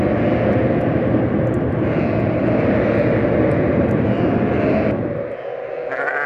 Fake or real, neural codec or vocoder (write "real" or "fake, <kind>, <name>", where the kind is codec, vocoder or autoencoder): real